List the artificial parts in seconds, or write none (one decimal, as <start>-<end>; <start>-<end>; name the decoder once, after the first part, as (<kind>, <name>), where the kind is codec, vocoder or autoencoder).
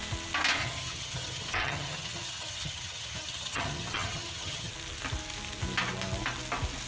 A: 0.6-4.7 (vocoder, HiFi-GAN)